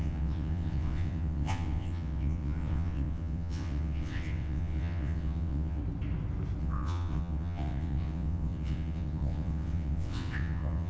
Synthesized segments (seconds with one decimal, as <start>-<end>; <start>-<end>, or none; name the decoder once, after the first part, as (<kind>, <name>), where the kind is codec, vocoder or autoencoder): 0.0-5.8 (vocoder, WaveNeXt); 6.6-10.9